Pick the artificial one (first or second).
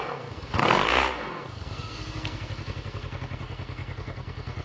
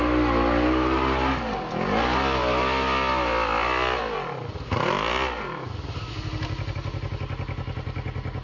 first